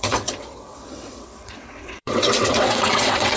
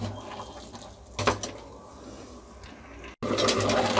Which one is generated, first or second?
first